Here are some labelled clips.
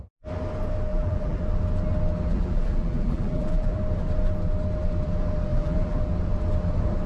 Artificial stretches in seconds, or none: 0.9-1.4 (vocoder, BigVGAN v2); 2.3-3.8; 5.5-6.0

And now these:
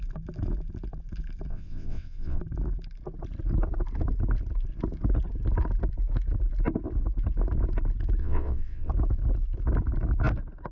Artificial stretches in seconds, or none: 1.5-2.4 (vocoder, WaveNeXt); 8.2-8.9

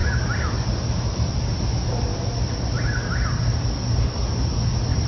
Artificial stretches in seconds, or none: none

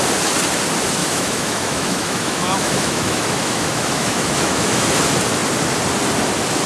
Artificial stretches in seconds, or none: 1.0-5.0 (autoencoder, DAC-VAE)